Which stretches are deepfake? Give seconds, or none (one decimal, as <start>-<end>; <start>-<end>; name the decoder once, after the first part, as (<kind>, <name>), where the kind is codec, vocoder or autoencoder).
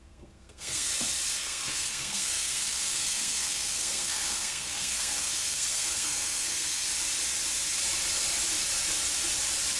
0.0-0.9 (codec, SNAC); 1.4-6.9